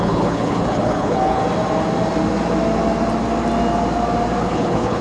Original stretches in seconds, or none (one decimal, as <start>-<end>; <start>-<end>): 1.4-4.4

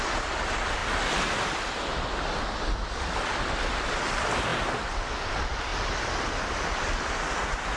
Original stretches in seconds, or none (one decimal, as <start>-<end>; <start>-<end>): 0.0-7.8

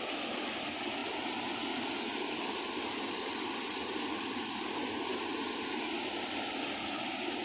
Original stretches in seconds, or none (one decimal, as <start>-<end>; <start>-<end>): 0.0-7.4

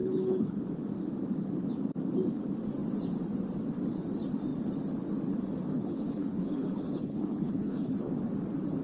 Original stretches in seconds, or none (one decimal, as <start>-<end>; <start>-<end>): 0.6-5.7; 8.1-8.8

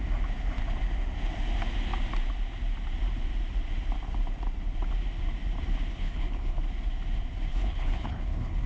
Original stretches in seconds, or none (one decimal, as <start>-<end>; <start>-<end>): 0.0-5.9; 6.6-7.5

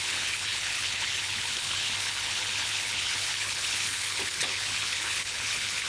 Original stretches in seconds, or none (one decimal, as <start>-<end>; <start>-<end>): none

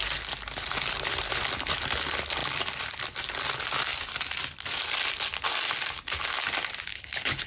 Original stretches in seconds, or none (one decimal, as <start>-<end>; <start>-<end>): 0.0-6.9